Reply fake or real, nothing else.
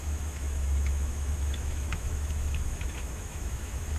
fake